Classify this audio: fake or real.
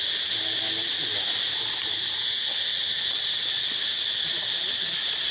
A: real